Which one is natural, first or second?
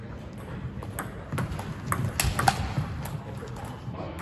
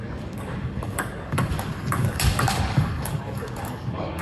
first